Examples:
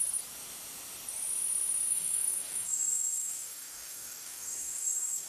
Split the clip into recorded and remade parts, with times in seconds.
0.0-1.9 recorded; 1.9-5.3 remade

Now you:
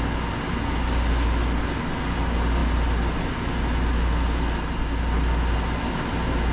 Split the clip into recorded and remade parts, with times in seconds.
0.0-6.5 recorded

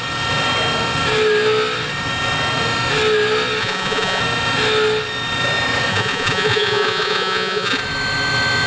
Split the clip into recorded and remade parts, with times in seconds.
0.0-3.6 recorded; 3.6-4.2 remade; 4.2-5.9 recorded; 5.9-7.8 remade; 7.8-8.7 recorded